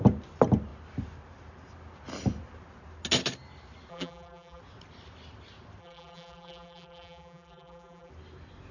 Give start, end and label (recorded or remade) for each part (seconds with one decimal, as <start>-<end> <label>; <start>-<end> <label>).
0.0-3.9 recorded; 3.9-4.6 remade; 4.6-5.8 recorded; 5.8-8.1 remade; 8.1-8.7 recorded

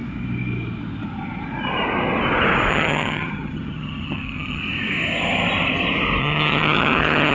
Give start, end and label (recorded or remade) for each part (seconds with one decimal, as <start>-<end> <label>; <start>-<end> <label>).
0.0-2.7 recorded; 2.7-4.6 remade; 4.6-6.2 recorded; 6.2-7.3 remade

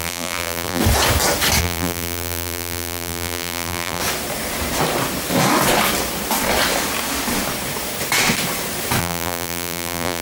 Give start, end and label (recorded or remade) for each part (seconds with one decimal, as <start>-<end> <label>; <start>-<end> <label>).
0.0-0.8 remade; 0.8-1.6 recorded; 1.6-4.0 remade; 4.0-9.0 recorded; 9.0-10.2 remade

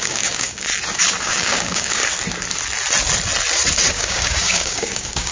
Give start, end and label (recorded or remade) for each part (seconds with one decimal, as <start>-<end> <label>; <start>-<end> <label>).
0.0-0.7 remade; 0.7-1.2 recorded; 1.2-2.0 remade; 2.0-3.9 recorded; 3.9-5.3 remade

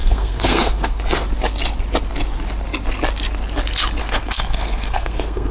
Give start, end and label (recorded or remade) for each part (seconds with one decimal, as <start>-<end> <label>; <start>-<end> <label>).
0.0-1.0 remade; 1.0-4.0 recorded; 4.0-5.5 remade

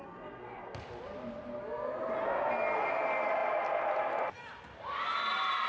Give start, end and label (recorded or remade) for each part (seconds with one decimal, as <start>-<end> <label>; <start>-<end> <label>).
0.0-5.7 recorded